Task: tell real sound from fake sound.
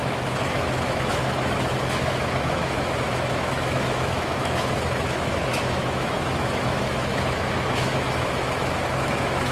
fake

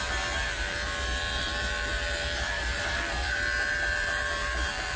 fake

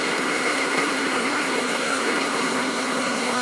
fake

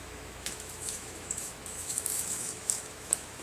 fake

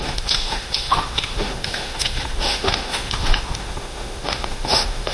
fake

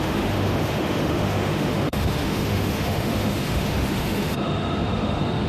fake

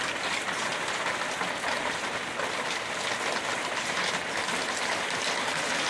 real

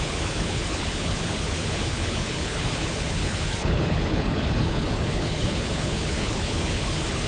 fake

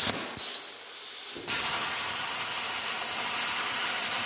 real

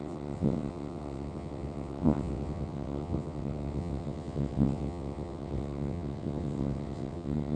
fake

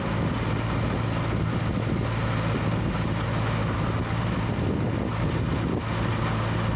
real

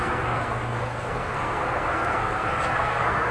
fake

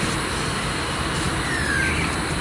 real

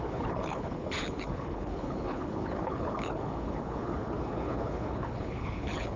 fake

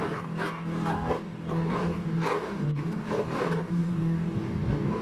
fake